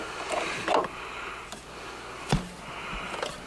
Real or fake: real